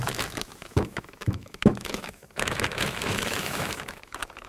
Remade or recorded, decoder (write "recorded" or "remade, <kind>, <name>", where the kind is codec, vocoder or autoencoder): remade, autoencoder, DAC-VAE